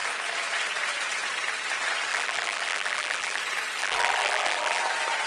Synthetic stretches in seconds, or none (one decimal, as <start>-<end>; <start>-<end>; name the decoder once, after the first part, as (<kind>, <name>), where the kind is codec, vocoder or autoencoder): 2.1-3.4 (vocoder, BigVGAN v2); 3.8-4.8